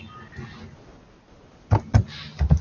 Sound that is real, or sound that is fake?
real